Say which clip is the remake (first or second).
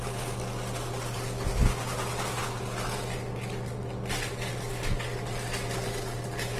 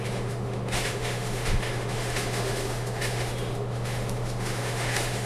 second